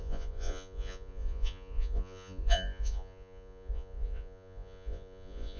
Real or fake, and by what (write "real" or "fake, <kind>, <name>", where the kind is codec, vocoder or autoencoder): fake, vocoder, Vocos